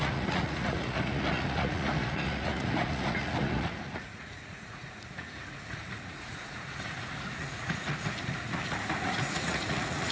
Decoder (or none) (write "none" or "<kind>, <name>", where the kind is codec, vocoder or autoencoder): vocoder, Vocos